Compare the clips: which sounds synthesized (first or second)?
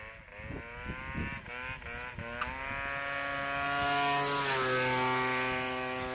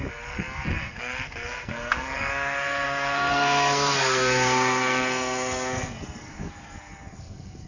second